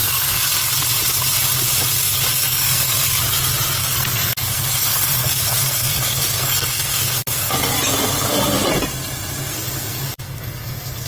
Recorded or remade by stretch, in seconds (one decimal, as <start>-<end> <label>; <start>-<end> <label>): 0.0-0.5 remade; 0.5-2.3 recorded; 2.3-3.2 remade; 3.2-3.8 recorded; 3.8-7.5 remade; 7.5-9.5 recorded; 9.5-11.1 remade